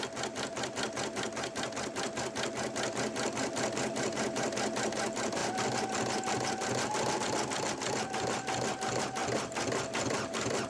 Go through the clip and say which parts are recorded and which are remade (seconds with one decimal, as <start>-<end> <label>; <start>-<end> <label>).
0.0-10.7 recorded